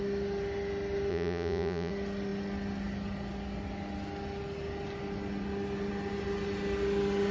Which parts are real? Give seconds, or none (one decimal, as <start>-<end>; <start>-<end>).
0.0-1.1; 1.9-7.3